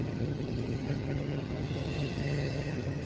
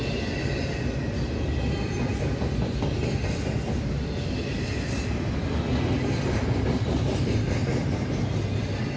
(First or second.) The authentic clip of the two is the second